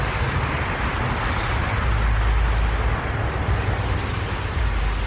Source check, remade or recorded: recorded